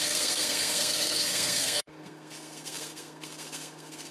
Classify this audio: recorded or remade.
remade